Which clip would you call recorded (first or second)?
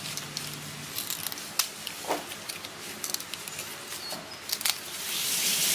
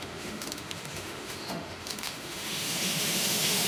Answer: first